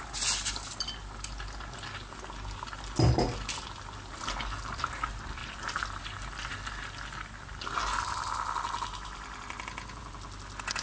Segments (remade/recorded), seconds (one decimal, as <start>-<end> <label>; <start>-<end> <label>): 0.0-10.8 recorded